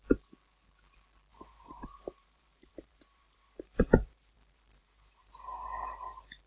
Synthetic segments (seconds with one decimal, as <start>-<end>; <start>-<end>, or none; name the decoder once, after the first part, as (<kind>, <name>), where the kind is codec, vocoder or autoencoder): 1.3-5.2 (vocoder, BigVGAN v2)